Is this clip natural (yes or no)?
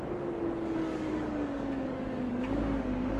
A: no